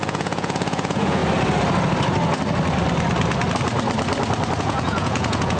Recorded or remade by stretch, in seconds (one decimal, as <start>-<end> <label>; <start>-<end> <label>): 0.0-1.2 remade; 1.2-4.6 recorded; 4.6-5.6 remade